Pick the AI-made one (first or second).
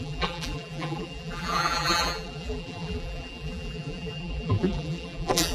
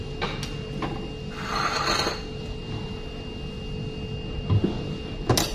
first